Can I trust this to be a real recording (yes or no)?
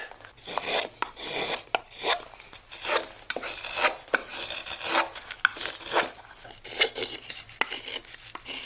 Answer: yes